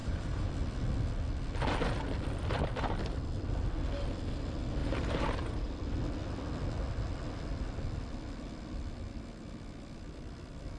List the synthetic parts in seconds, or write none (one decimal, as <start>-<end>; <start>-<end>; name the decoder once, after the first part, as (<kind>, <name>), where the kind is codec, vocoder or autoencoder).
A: 0.0-0.5 (vocoder, BigVGAN v2); 4.8-5.7